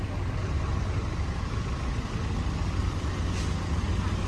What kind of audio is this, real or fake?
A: real